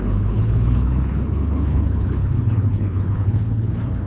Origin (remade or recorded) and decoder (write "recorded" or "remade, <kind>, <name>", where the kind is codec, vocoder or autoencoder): remade, codec, HILCodec